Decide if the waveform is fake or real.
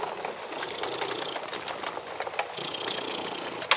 real